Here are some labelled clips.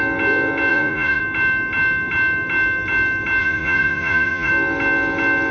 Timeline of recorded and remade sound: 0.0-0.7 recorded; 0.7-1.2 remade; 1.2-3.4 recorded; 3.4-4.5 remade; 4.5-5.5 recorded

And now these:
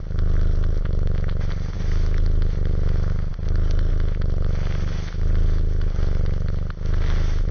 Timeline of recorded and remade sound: 0.0-7.5 recorded

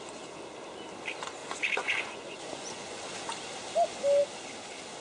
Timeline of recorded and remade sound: 0.0-1.4 recorded; 1.4-3.0 remade; 3.0-5.0 recorded

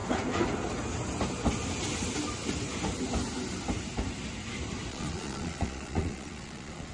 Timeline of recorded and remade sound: 0.0-4.9 recorded; 4.9-6.9 remade

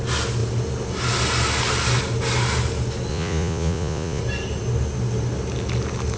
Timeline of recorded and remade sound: 0.0-3.1 recorded; 3.1-4.2 remade; 4.2-6.2 recorded

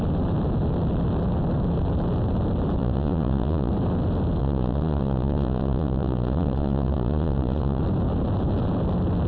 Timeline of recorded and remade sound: 0.0-2.8 recorded; 2.8-3.7 remade; 3.7-4.4 recorded; 4.4-7.8 remade; 7.8-9.3 recorded